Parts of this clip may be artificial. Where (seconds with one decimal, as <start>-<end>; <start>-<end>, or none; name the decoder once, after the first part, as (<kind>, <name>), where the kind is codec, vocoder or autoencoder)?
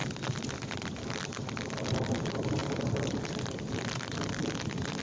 none